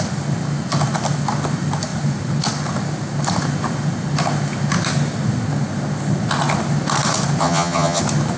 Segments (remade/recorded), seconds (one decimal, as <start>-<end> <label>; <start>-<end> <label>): 0.0-7.4 recorded; 7.4-8.0 remade; 8.0-8.4 recorded